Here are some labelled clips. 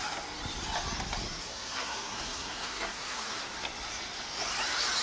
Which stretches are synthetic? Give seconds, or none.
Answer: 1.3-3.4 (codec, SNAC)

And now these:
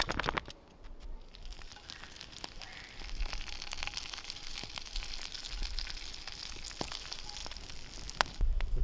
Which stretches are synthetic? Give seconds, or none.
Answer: none

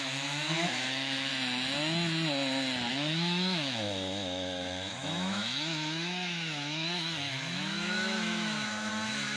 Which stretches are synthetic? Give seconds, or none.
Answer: 0.0-1.3 (autoencoder, DAC-VAE); 2.9-9.4